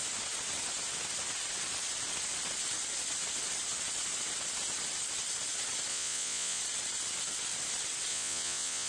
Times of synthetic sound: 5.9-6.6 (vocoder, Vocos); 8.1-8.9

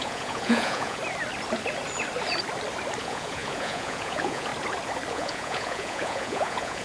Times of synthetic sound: 0.0-1.0 (vocoder, Vocos); 3.0-4.5; 5.1-6.8

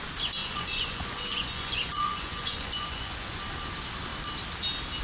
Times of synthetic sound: 0.4-3.4 (vocoder, Vocos)

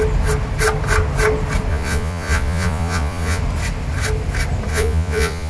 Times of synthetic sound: 1.7-3.4 (vocoder, Vocos); 4.7-5.5

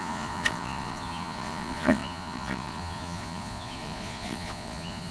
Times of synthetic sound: 0.0-5.1 (vocoder, Vocos)

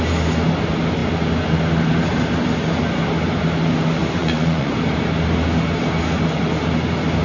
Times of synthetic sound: 4.2-4.7 (vocoder, Vocos)

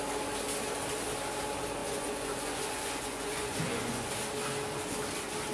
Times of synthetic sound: 1.8-4.1 (vocoder, Vocos)

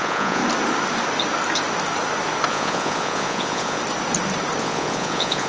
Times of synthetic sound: 0.0-0.4 (vocoder, Vocos); 2.5-3.8; 4.6-5.5